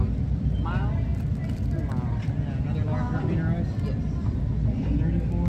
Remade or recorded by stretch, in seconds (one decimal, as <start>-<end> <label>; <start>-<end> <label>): 0.0-5.5 recorded